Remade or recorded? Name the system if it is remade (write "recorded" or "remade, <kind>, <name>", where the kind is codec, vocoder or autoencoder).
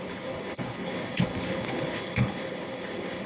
remade, codec, HILCodec